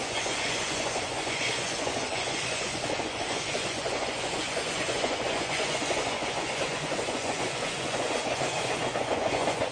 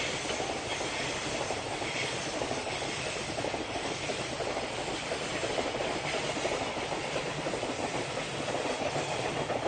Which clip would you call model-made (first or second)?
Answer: first